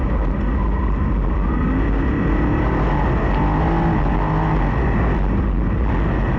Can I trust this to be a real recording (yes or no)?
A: yes